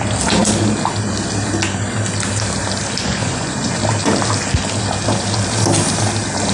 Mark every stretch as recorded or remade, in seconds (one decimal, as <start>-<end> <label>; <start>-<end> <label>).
0.0-3.0 recorded; 3.0-3.8 remade; 3.8-6.5 recorded